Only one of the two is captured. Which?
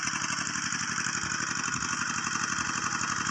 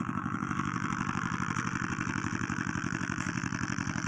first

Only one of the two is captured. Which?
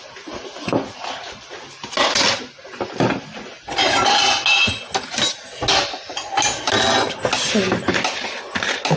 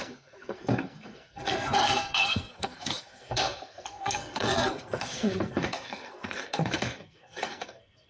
first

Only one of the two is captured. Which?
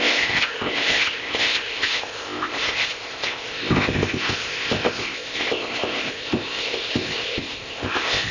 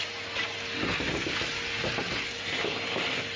second